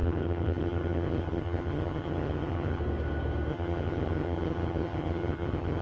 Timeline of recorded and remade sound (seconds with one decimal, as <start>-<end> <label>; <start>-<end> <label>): 0.0-2.8 remade; 2.8-3.5 recorded; 3.5-5.8 remade